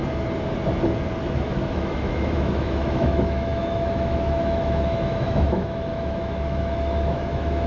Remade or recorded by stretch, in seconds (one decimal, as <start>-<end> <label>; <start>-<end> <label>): 0.0-1.2 recorded; 1.2-7.7 remade